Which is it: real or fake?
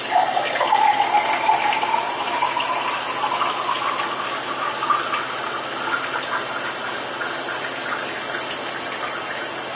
real